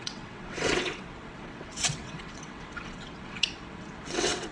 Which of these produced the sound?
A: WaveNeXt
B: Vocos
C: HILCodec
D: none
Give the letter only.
A